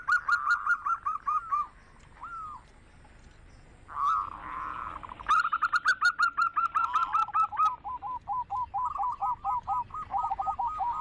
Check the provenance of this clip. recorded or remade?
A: recorded